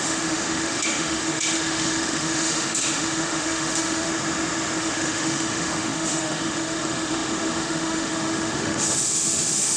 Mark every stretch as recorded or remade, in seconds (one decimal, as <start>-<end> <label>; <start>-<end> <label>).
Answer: 0.0-4.1 remade; 4.1-4.8 recorded; 4.8-9.8 remade